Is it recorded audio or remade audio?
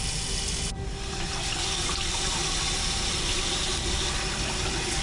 recorded